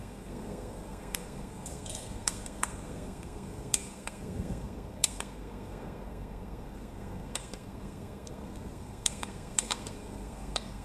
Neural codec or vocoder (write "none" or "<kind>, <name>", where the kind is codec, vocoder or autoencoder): codec, SNAC